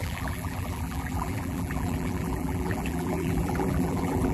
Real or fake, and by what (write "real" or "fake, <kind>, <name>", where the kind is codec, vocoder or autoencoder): fake, vocoder, BigVGAN v2